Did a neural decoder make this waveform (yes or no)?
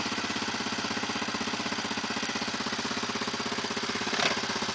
no